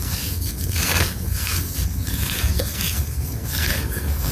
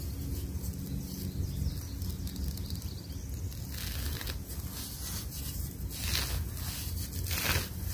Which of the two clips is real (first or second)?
second